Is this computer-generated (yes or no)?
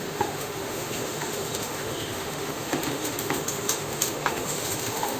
yes